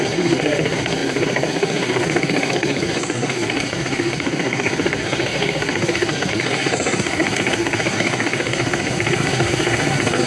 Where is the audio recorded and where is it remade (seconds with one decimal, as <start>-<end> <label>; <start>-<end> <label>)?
0.0-10.3 remade